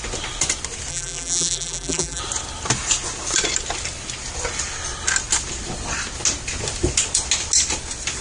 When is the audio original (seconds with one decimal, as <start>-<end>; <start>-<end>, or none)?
0.0-0.9; 2.2-8.2

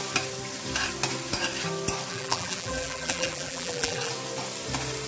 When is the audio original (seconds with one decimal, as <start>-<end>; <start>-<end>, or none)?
0.0-2.1; 4.1-5.1